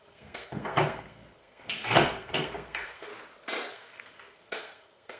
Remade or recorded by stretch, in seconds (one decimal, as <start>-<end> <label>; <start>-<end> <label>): 0.0-3.1 remade; 3.1-3.7 recorded; 3.7-5.2 remade